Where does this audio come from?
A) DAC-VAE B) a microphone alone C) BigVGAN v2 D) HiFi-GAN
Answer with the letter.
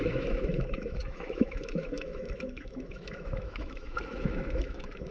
A